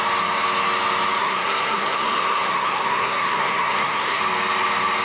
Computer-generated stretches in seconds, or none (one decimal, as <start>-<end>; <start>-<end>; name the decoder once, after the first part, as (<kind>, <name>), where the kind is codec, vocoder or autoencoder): 1.2-4.2 (codec, SNAC)